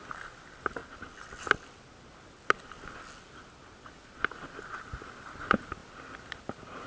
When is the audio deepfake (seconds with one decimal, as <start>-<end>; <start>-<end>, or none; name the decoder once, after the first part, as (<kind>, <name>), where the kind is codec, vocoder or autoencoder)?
none